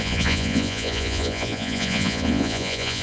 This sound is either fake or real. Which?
fake